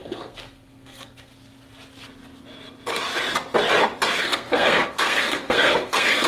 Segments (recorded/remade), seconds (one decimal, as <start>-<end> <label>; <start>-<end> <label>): 0.0-1.3 remade; 1.3-4.2 recorded; 4.2-6.3 remade